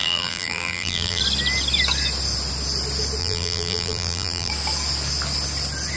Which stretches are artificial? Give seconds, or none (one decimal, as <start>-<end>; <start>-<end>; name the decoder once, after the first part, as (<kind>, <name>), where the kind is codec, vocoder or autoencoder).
0.0-1.2 (vocoder, BigVGAN v2); 3.2-4.5